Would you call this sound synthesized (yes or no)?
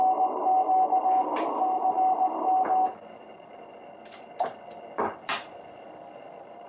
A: no